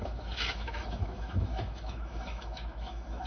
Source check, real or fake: fake